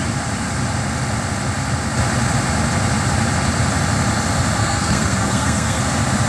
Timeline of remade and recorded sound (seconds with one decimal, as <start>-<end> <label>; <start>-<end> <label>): 0.0-4.6 recorded; 4.6-5.8 remade; 5.8-6.3 recorded